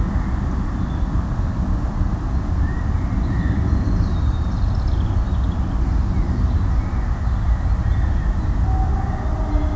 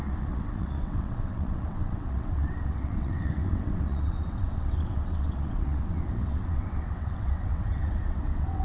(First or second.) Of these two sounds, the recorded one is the first